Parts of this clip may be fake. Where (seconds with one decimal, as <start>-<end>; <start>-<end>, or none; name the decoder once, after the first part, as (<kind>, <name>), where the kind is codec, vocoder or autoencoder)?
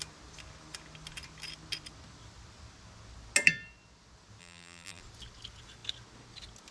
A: 4.4-5.0 (vocoder, BigVGAN v2)